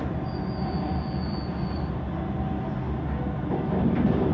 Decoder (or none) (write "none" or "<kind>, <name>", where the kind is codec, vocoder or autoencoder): none